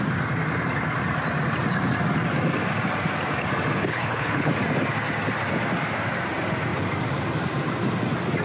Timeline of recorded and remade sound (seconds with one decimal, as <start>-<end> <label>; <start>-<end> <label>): 0.0-3.8 recorded; 3.8-4.5 remade; 4.5-8.4 recorded